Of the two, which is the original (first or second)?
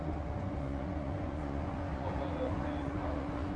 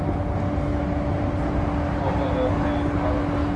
second